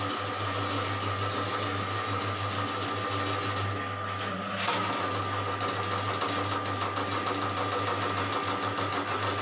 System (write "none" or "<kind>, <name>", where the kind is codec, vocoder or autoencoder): none